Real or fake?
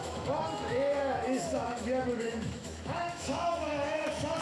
fake